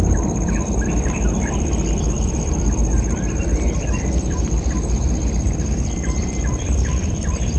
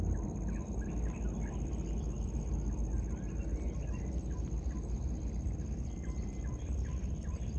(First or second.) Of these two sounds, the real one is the second